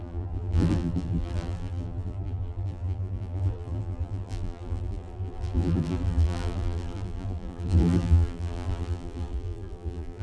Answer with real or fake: fake